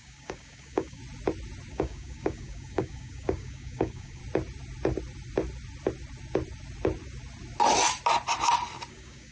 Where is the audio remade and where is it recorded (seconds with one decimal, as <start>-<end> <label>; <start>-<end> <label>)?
0.0-1.0 remade; 1.0-1.7 recorded; 1.7-4.2 remade; 4.2-8.9 recorded; 8.9-9.3 remade